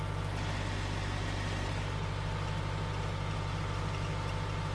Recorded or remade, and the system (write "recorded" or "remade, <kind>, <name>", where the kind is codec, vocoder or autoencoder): recorded